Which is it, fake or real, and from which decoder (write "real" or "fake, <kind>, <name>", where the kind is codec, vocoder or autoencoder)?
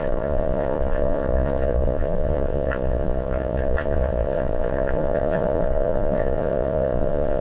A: fake, vocoder, Vocos